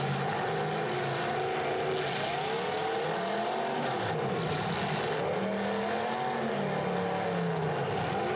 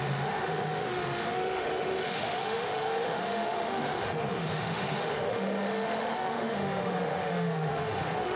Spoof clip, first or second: second